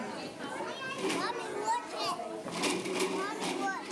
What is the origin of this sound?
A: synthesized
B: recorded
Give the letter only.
B